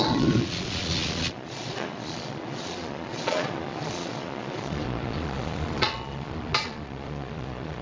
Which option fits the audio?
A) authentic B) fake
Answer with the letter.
B